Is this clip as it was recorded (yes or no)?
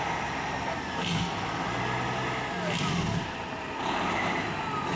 yes